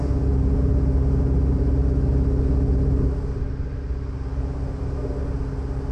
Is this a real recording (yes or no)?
yes